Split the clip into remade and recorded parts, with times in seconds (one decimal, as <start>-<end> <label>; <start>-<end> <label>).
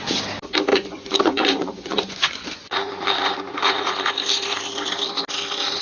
0.0-0.7 recorded; 0.7-4.1 remade; 4.1-5.8 recorded